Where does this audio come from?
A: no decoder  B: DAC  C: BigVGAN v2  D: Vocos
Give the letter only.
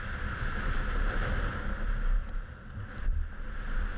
A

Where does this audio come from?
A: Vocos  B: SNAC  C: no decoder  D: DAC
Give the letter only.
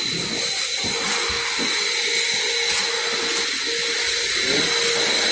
C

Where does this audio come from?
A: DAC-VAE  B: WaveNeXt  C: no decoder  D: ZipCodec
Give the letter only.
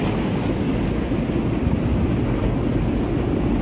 C